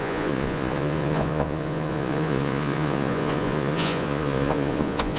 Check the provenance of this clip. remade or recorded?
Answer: remade